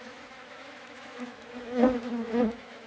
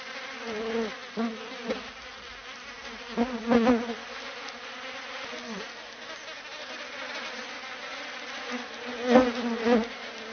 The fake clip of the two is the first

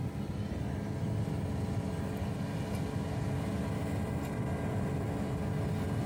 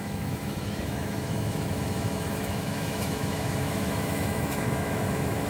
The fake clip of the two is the second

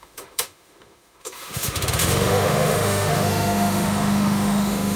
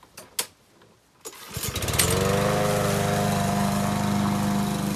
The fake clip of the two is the first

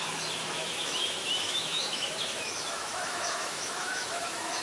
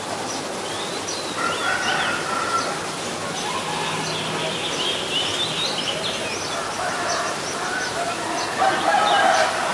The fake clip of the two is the first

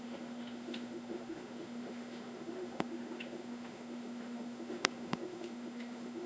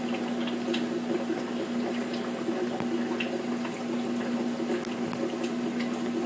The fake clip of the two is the first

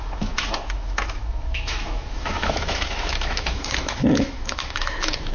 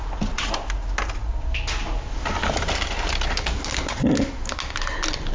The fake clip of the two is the first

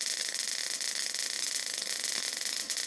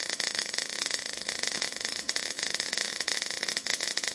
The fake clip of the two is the second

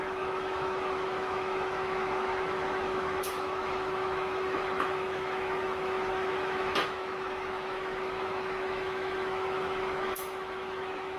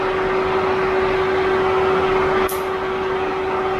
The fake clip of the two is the first